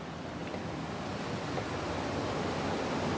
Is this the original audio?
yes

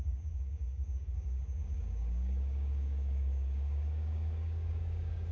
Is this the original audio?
no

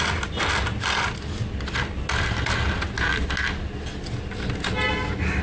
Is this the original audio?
yes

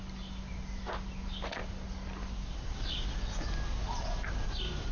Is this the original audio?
yes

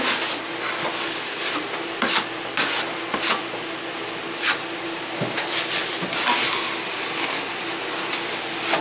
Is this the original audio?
yes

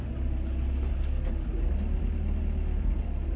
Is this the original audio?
yes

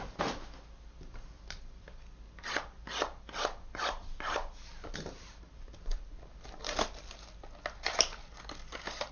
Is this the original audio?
yes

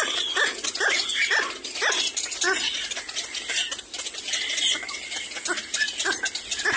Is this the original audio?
yes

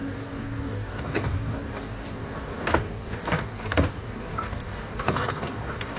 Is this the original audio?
no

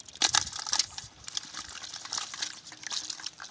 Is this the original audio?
yes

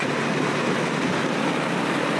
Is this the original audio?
yes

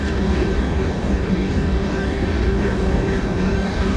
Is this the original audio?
no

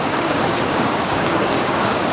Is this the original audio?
no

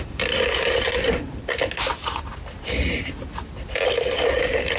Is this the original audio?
yes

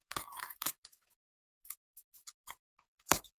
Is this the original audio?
no